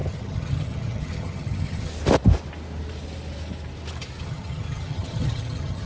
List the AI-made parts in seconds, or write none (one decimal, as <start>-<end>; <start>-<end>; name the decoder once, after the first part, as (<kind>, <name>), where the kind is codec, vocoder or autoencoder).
0.0-1.9 (vocoder, HiFi-GAN); 4.2-5.9